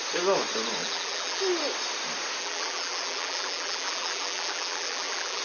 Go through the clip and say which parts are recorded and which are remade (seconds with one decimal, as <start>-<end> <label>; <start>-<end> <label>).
0.0-0.8 recorded; 0.8-1.4 remade; 1.4-2.4 recorded; 2.4-5.4 remade